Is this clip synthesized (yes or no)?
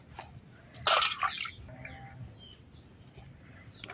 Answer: no